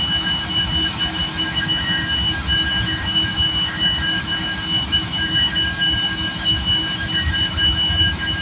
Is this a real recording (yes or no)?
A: no